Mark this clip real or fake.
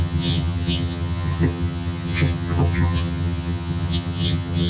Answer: fake